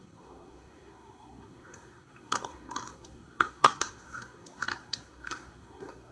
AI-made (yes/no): yes